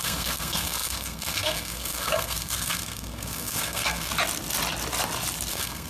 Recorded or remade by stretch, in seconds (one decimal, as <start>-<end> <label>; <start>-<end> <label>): 0.0-4.1 remade; 4.1-5.5 recorded; 5.5-5.9 remade